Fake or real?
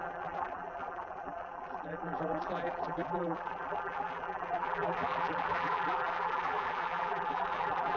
fake